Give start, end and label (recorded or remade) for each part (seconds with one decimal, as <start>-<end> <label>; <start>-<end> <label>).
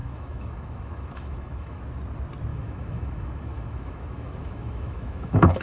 0.0-1.8 remade; 1.8-2.5 recorded; 2.5-5.6 remade